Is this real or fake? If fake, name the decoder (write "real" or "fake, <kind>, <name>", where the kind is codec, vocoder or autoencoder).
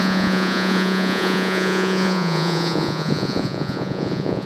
fake, vocoder, Vocos